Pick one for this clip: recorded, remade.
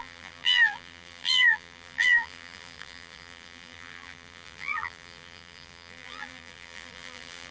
remade